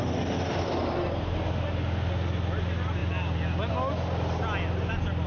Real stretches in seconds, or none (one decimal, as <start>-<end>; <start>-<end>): 0.0-5.3